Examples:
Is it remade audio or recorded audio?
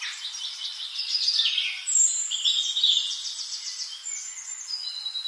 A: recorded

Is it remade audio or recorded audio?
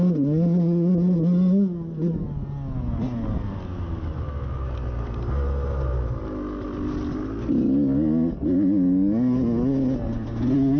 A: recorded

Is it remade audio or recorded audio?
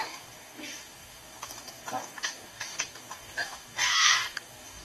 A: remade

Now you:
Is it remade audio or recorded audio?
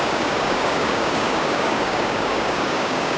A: remade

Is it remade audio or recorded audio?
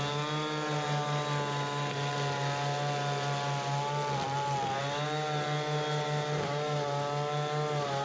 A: recorded